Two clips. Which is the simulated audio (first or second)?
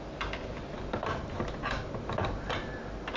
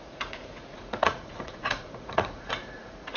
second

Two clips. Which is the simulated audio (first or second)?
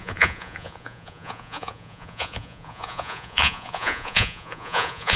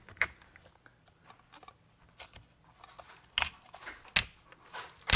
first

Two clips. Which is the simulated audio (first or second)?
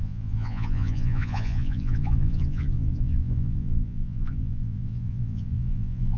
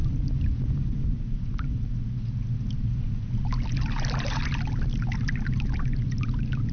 first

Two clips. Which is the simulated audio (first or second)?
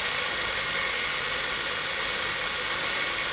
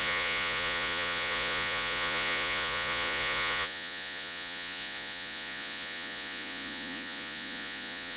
second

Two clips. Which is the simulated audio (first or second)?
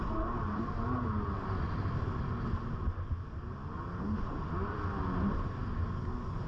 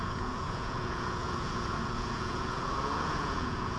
second